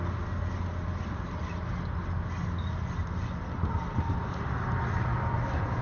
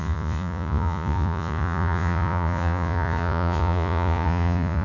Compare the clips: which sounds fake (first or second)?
second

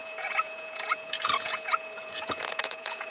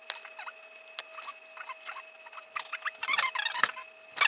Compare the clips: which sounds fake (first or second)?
first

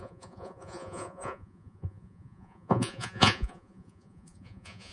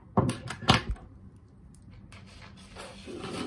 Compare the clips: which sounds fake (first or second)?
first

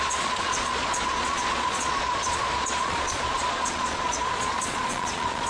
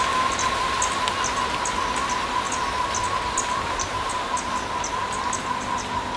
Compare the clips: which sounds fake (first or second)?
first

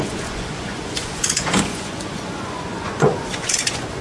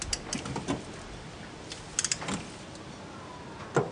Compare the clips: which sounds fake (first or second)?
first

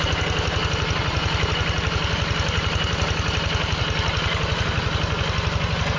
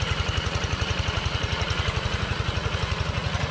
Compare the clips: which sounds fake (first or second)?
second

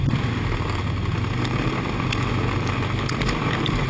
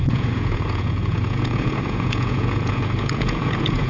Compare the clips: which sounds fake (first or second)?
second